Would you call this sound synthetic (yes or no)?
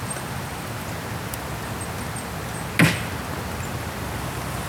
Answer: no